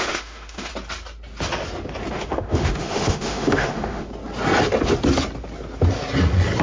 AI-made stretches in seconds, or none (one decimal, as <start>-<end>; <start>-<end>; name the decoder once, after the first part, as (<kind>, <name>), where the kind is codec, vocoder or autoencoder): 0.0-0.7 (autoencoder, DAC-VAE); 2.1-4.1